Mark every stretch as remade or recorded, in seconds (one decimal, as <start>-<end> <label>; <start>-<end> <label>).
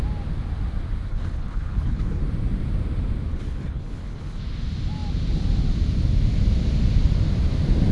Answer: 0.0-1.1 recorded; 1.1-2.2 remade; 2.2-3.3 recorded; 3.3-4.4 remade; 4.4-7.9 recorded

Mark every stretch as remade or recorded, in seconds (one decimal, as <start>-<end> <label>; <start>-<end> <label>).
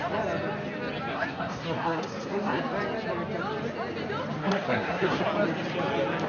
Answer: 0.0-1.1 recorded; 1.1-2.6 remade; 2.6-4.4 recorded; 4.4-5.2 remade; 5.2-6.3 recorded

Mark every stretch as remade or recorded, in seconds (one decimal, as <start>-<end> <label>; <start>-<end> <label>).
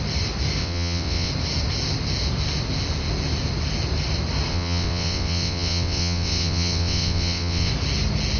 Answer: 0.0-0.6 recorded; 0.6-1.3 remade; 1.3-4.5 recorded; 4.5-7.7 remade; 7.7-8.4 recorded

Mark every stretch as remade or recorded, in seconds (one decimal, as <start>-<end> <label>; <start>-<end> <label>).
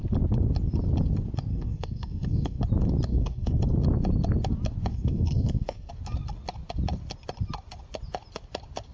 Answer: 0.0-1.5 recorded; 1.5-2.6 remade; 2.6-3.1 recorded; 3.1-3.6 remade; 3.6-4.9 recorded; 4.9-5.9 remade; 5.9-8.9 recorded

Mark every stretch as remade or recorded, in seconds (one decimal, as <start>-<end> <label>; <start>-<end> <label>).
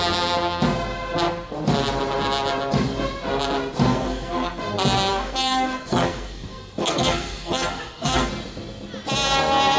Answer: 0.0-3.9 recorded; 3.9-4.6 remade; 4.6-5.1 recorded; 5.1-8.3 remade; 8.3-9.8 recorded